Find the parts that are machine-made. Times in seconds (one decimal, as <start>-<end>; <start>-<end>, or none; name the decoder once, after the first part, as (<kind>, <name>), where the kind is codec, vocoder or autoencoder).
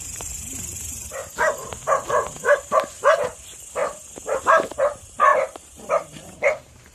0.0-1.2 (vocoder, BigVGAN v2); 1.8-3.8; 4.4-6.9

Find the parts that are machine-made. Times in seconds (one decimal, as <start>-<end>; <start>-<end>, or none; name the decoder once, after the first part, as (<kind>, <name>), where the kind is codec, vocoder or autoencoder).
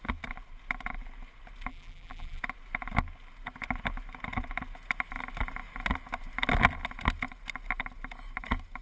1.7-2.4 (vocoder, BigVGAN v2)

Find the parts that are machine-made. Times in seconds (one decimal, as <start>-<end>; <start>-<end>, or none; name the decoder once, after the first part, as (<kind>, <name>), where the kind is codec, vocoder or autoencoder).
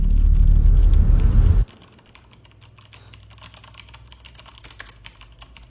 none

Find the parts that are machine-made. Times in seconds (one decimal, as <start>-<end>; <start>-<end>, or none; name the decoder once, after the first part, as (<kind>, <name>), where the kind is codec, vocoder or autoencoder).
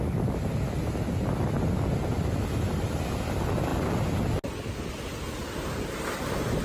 none